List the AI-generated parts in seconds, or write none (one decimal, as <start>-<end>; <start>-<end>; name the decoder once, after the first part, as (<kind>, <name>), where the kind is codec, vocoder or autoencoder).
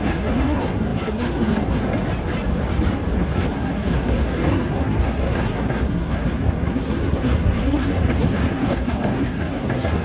0.0-1.8 (codec, SNAC); 3.2-10.0